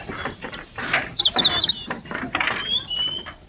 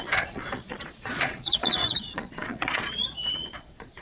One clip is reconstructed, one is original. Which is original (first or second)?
first